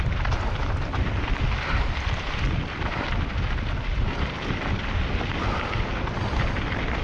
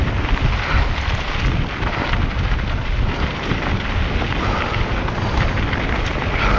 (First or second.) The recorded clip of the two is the second